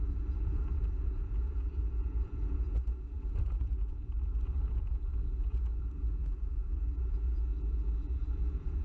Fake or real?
fake